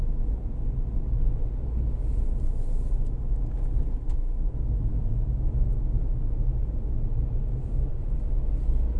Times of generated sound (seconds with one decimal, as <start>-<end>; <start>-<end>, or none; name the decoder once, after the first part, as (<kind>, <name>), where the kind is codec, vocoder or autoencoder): 7.9-8.6 (vocoder, BigVGAN v2)